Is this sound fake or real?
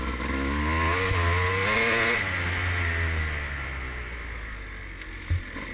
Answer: real